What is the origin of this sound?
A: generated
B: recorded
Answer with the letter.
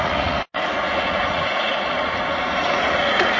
A